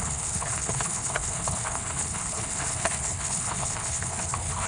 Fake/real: fake